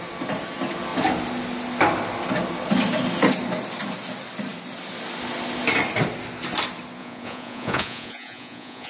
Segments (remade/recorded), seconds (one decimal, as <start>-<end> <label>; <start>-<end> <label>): 0.0-7.0 recorded; 7.0-8.9 remade